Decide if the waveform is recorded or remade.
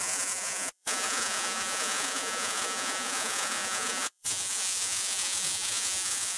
remade